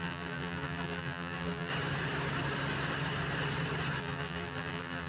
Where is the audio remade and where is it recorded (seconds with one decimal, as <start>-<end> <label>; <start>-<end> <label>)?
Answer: 0.0-1.7 remade; 1.7-4.0 recorded; 4.0-5.1 remade